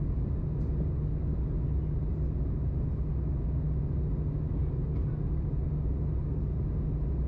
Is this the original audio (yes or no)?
yes